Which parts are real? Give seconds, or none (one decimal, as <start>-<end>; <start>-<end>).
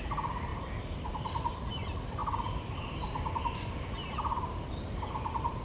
0.0-5.6